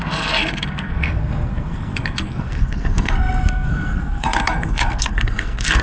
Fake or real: fake